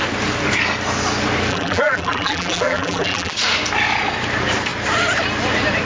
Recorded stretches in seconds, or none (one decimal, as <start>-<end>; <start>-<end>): 0.0-1.5; 3.3-5.9

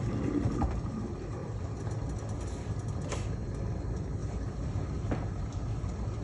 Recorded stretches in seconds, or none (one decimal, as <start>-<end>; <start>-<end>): 0.0-6.2